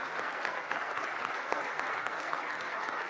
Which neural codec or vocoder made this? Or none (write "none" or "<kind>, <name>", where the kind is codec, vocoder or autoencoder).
codec, SNAC